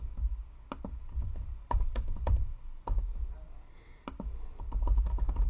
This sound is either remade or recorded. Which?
recorded